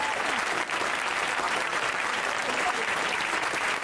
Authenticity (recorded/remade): remade